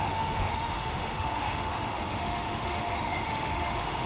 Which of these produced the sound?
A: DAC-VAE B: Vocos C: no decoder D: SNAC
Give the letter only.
A